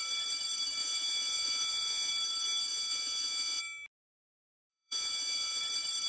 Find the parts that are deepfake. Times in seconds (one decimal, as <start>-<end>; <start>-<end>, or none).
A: 0.8-2.1; 2.7-3.6; 4.7-5.6